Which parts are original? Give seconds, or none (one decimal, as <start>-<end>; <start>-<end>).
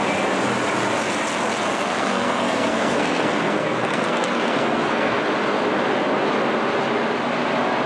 0.0-1.7; 5.2-7.9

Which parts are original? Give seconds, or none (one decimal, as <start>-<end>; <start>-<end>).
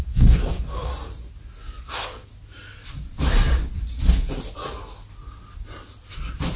0.9-1.8; 2.3-6.6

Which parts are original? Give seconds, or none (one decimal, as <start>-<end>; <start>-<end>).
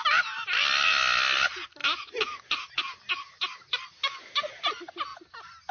0.0-5.7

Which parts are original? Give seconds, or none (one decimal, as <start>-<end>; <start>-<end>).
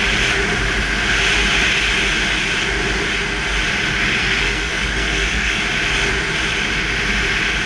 0.0-4.2; 5.6-7.7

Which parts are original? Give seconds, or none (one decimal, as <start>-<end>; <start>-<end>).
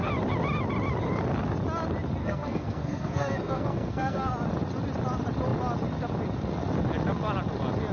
0.0-2.2; 4.3-7.9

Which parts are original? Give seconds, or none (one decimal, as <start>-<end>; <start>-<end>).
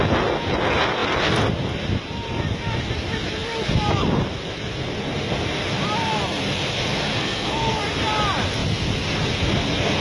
0.0-7.1; 7.8-10.0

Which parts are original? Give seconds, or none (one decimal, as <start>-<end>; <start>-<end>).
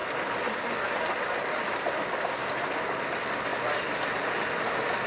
0.0-5.1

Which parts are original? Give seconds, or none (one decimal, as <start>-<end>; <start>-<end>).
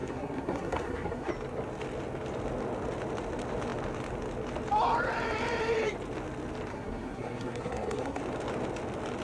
1.3-6.7; 8.2-9.2